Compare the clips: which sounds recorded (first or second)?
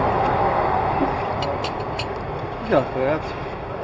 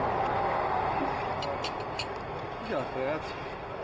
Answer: second